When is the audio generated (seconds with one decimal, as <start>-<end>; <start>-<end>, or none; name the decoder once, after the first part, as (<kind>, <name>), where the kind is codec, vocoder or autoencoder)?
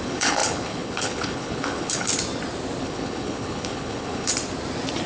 0.0-2.1 (codec, HILCodec); 2.8-4.3